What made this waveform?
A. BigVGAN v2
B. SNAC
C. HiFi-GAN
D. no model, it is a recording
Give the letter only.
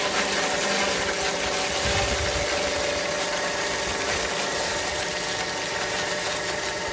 D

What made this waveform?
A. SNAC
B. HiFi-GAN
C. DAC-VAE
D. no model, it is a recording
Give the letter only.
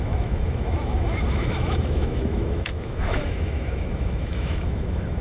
C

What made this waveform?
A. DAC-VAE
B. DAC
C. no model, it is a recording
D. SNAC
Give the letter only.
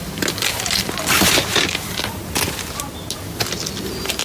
C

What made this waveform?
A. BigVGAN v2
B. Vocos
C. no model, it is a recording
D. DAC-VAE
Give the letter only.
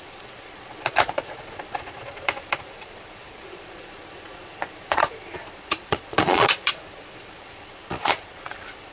B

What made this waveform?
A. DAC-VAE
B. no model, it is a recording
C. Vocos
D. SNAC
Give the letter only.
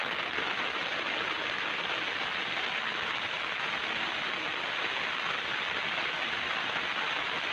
B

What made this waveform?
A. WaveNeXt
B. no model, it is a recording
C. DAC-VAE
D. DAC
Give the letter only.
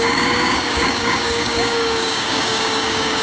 D